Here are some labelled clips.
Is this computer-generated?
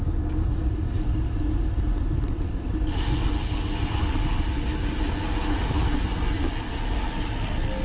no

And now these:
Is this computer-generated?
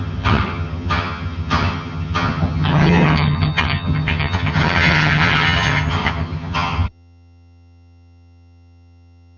yes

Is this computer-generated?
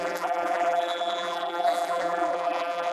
yes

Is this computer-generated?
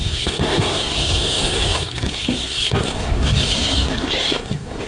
yes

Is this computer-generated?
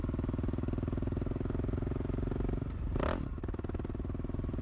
no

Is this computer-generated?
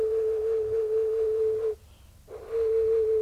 no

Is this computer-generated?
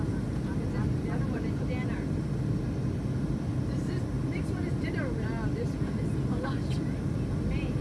no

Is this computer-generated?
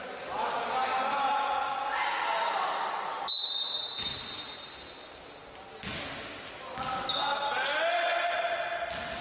no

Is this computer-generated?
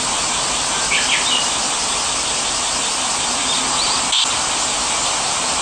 no